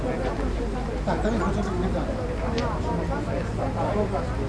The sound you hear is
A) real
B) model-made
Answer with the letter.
A